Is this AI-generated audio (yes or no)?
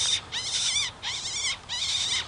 no